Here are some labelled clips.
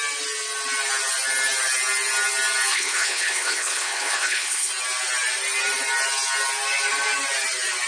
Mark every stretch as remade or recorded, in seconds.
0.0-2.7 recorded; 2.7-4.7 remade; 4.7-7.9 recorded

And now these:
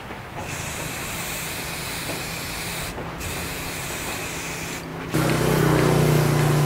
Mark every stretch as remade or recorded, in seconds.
0.0-0.4 recorded; 0.4-1.3 remade; 1.3-2.7 recorded; 2.7-4.2 remade; 4.2-6.7 recorded

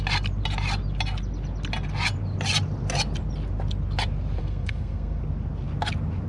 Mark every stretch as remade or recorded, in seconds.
0.0-4.4 recorded; 4.4-5.2 remade; 5.2-6.3 recorded